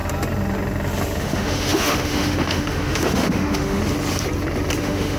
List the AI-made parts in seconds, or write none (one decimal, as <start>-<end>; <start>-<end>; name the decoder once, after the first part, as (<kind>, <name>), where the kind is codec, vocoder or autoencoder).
1.2-3.8 (autoencoder, DAC-VAE); 4.8-5.2